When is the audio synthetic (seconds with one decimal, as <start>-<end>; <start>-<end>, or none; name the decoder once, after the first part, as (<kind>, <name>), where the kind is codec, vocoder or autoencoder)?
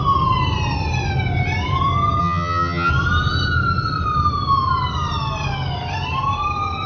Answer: 2.2-2.9 (vocoder, HiFi-GAN)